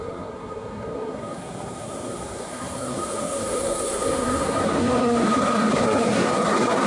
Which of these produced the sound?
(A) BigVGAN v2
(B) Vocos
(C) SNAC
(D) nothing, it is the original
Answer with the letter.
C